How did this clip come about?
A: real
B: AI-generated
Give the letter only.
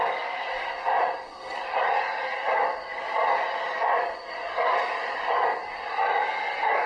B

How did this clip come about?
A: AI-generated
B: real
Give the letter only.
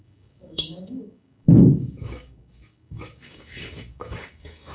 A